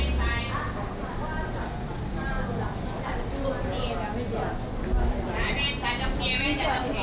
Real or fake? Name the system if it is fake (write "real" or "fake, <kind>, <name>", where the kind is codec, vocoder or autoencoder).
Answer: real